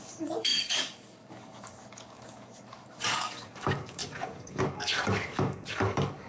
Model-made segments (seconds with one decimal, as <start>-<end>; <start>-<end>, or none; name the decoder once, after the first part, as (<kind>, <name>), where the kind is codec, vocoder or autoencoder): 0.0-6.3 (codec, DAC)